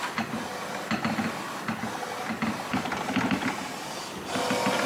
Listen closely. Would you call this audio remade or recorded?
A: recorded